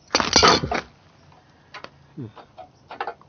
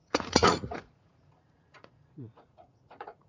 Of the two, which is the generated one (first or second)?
second